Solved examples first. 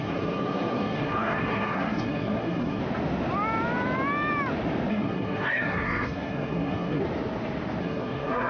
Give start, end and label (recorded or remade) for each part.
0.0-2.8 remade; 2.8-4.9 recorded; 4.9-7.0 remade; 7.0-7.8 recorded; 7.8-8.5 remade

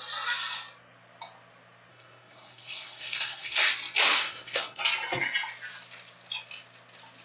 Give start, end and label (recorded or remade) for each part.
0.0-1.9 recorded; 1.9-3.7 remade; 3.7-4.2 recorded; 4.2-4.8 remade; 4.8-7.2 recorded

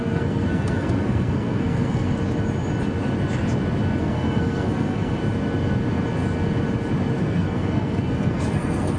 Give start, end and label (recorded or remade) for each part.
0.0-2.2 remade; 2.2-4.0 recorded; 4.0-5.2 remade; 5.2-7.2 recorded; 7.2-9.0 remade

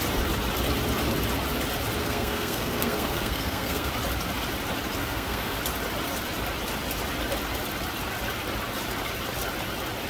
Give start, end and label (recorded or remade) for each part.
0.0-2.0 recorded; 2.0-3.9 remade; 3.9-5.0 recorded; 5.0-5.6 remade; 5.6-10.1 recorded

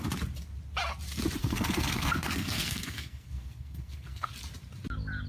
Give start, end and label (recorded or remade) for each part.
0.0-1.4 recorded; 1.4-4.3 remade; 4.3-5.3 recorded

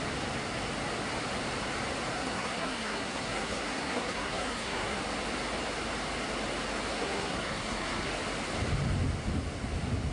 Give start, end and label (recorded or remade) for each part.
0.0-2.1 recorded; 2.1-5.0 remade; 5.0-6.9 recorded; 6.9-8.1 remade; 8.1-10.1 recorded

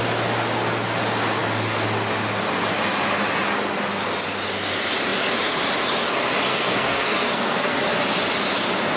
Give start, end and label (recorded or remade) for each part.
0.0-6.5 recorded; 6.5-7.8 remade; 7.8-9.0 recorded

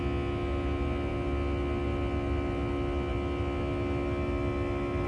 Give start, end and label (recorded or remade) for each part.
0.0-5.1 recorded